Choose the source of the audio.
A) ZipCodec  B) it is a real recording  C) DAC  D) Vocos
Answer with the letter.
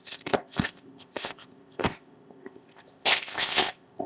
A